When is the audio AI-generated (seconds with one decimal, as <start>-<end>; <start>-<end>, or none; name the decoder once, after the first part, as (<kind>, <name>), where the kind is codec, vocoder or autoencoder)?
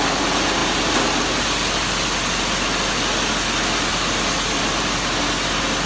none